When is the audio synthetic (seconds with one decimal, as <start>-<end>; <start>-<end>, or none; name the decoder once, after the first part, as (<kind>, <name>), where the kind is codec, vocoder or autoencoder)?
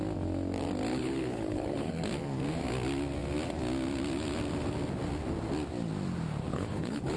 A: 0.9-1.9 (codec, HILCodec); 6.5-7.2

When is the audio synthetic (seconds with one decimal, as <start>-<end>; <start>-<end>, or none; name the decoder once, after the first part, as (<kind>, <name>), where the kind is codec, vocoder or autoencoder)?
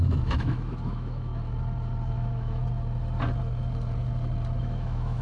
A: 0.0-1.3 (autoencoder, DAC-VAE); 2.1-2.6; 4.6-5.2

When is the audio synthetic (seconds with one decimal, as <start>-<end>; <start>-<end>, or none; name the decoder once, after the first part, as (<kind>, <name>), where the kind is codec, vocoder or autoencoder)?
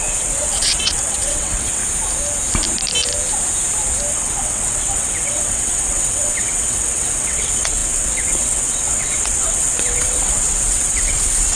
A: 0.0-1.8 (vocoder, WaveNeXt); 4.1-11.6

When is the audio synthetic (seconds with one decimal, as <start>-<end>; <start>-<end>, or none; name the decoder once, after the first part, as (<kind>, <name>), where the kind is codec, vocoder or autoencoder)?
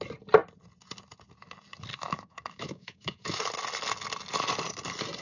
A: 1.9-3.4 (autoencoder, DAC-VAE)